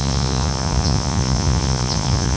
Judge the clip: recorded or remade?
remade